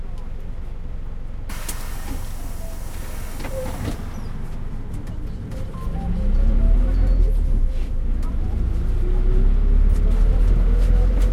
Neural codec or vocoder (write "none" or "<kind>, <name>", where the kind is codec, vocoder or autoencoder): none